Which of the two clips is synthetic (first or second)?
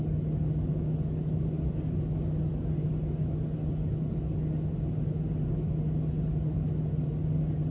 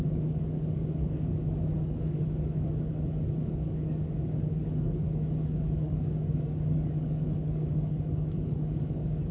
second